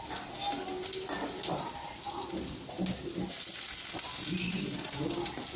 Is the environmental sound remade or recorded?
recorded